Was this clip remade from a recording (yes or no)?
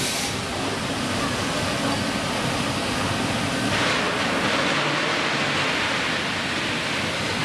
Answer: no